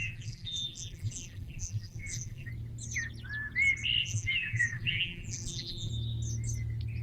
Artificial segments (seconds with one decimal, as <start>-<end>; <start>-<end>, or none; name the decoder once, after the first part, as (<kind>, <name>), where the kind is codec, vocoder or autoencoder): 0.0-2.5 (vocoder, BigVGAN v2); 4.0-5.9